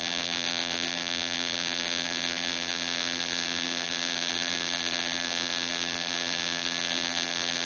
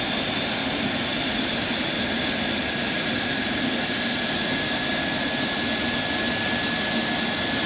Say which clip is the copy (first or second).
first